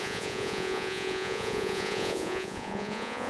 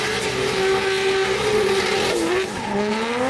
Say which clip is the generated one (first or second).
first